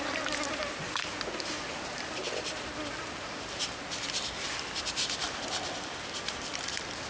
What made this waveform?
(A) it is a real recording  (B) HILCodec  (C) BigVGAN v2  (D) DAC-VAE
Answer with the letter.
C